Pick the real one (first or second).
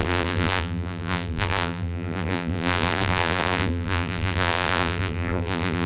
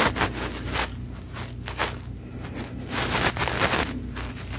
second